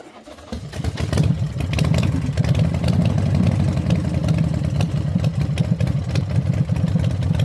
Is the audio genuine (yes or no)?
yes